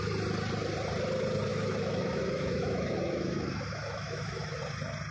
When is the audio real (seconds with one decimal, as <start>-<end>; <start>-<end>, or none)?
0.0-1.5; 4.6-5.1

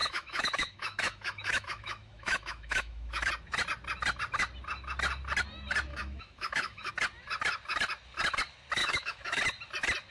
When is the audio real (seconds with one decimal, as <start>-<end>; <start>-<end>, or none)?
3.3-5.9; 6.9-8.8; 9.4-10.1

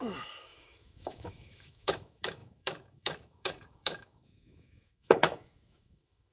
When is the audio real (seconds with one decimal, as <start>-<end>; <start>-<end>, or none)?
none

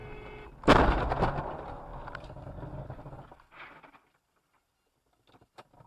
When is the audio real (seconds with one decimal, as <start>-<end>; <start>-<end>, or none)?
0.0-5.9